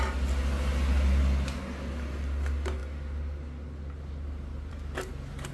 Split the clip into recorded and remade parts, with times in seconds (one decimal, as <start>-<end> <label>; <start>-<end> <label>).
0.0-5.5 recorded